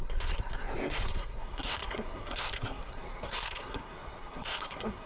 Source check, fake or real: fake